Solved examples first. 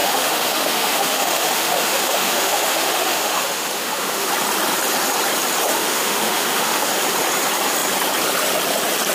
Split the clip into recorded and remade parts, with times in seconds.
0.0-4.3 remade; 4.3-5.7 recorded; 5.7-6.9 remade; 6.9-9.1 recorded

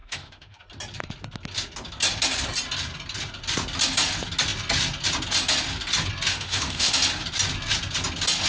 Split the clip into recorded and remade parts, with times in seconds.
0.0-0.6 remade; 0.6-6.3 recorded; 6.3-6.9 remade; 6.9-8.5 recorded

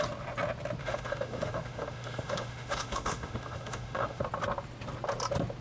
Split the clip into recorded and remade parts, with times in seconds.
0.0-0.8 recorded; 0.8-4.2 remade; 4.2-5.6 recorded

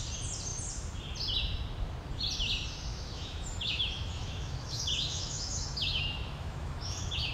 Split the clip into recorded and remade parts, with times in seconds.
0.0-2.9 recorded; 2.9-7.3 remade

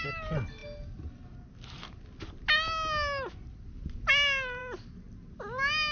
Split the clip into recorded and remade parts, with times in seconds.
0.0-5.9 recorded

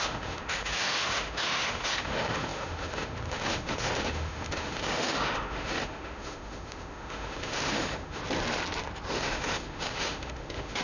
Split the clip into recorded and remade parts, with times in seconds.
0.0-8.2 remade; 8.2-9.1 recorded; 9.1-10.8 remade

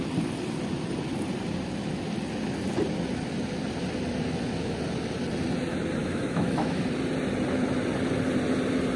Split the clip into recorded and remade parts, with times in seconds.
0.0-6.0 recorded; 6.0-6.8 remade; 6.8-9.0 recorded

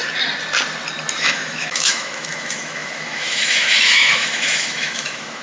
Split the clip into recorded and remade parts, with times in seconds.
0.0-1.2 recorded; 1.2-5.4 remade